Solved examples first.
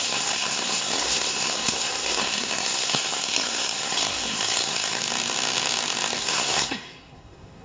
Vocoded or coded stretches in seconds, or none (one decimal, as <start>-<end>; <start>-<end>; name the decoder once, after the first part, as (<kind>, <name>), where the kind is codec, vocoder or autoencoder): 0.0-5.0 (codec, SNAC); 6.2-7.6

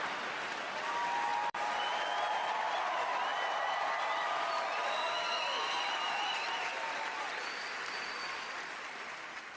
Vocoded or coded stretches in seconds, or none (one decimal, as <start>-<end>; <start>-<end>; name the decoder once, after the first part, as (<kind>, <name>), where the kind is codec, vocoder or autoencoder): 0.0-9.6 (vocoder, BigVGAN v2)

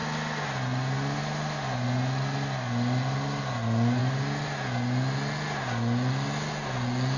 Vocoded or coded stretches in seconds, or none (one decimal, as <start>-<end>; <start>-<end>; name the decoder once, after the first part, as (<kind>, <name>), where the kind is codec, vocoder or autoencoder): none

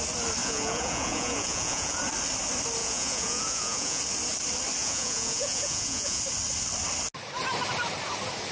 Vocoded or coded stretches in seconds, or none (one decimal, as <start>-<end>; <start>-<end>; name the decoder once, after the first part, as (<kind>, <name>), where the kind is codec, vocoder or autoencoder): 0.4-2.0 (vocoder, Vocos); 2.8-4.0; 4.8-6.2

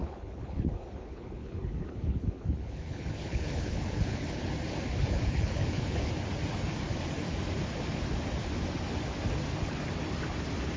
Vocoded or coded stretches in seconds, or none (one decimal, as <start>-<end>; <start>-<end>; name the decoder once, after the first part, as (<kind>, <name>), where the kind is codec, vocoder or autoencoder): 0.0-4.5 (codec, HILCodec); 4.9-6.1